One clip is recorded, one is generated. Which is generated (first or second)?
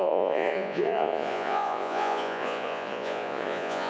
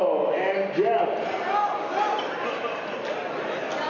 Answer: first